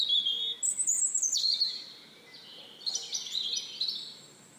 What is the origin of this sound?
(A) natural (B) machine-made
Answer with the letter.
A